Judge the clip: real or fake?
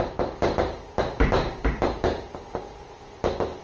fake